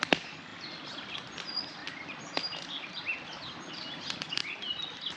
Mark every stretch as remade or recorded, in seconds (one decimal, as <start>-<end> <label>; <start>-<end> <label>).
0.0-1.8 remade; 1.8-3.7 recorded; 3.7-5.2 remade